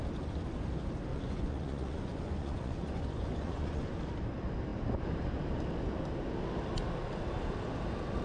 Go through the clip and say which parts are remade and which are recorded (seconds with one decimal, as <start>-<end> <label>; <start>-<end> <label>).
0.0-1.1 recorded; 1.1-3.9 remade; 3.9-8.2 recorded